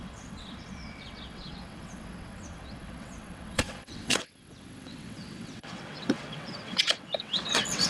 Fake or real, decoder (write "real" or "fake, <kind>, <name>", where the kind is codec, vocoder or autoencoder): fake, vocoder, WaveNeXt